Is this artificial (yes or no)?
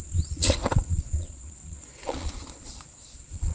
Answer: yes